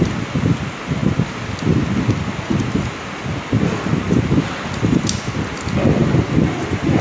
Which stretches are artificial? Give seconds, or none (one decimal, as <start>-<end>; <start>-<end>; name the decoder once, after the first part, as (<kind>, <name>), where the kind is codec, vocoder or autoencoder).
none